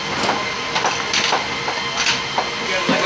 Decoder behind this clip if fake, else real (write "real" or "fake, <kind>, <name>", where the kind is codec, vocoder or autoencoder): real